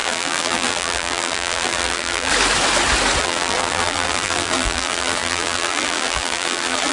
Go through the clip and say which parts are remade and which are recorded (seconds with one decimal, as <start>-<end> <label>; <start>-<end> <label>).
0.0-2.3 remade; 2.3-3.2 recorded; 3.2-6.9 remade